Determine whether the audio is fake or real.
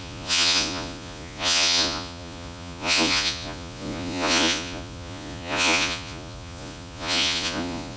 fake